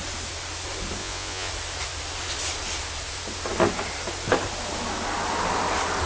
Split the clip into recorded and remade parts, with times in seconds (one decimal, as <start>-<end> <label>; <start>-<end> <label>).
0.0-1.0 recorded; 1.0-1.5 remade; 1.5-6.1 recorded